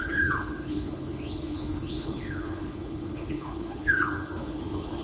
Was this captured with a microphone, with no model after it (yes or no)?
no